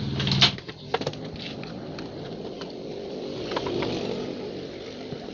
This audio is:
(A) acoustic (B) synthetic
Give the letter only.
A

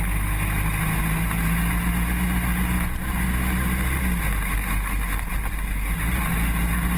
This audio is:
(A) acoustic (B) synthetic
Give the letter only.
A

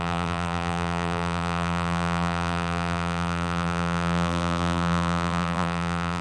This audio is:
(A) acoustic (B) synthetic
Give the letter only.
B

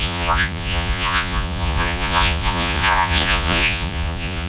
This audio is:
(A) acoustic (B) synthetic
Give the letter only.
B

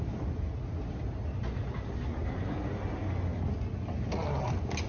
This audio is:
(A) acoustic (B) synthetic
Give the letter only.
A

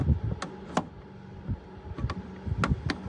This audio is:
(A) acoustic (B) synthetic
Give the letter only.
A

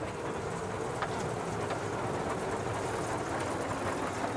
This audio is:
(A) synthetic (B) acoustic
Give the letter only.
B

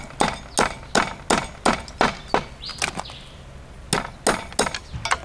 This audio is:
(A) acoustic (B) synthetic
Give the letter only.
A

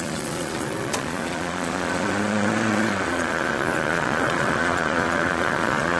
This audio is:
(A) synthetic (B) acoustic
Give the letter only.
A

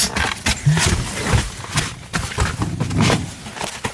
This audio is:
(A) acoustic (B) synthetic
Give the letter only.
A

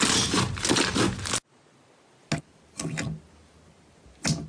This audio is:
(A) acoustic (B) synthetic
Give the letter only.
A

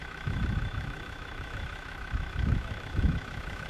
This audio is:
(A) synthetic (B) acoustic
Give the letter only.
A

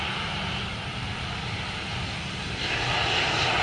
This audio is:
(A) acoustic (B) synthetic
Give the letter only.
A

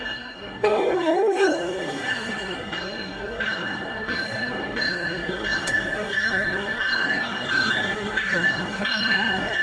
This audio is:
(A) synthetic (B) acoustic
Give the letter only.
A